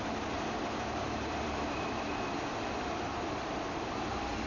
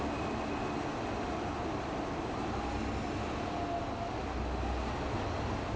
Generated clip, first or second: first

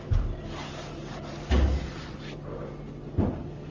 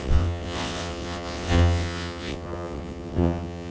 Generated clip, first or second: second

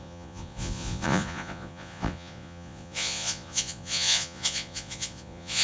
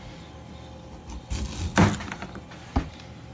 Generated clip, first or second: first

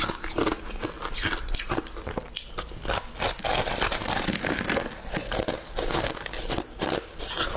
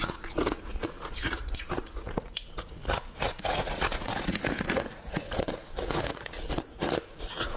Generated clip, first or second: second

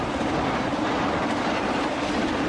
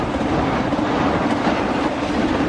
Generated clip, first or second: second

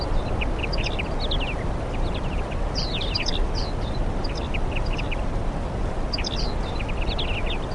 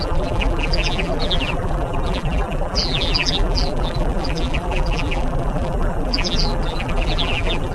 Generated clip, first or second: second